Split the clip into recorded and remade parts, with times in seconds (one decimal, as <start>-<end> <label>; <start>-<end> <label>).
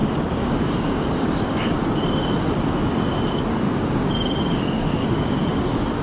0.0-1.8 remade; 1.8-3.6 recorded; 3.6-6.0 remade